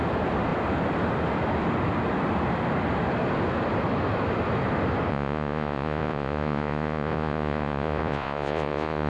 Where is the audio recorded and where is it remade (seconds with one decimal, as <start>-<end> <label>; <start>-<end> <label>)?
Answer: 0.0-5.1 recorded; 5.1-9.1 remade